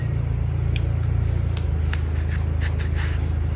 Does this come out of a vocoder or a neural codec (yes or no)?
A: no